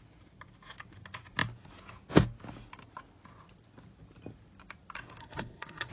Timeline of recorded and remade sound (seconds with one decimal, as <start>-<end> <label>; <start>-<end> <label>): 0.0-5.2 recorded; 5.2-5.9 remade